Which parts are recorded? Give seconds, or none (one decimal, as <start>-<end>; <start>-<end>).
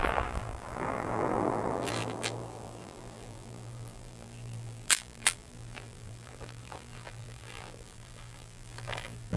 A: none